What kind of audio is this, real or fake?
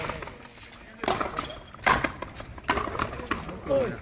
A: real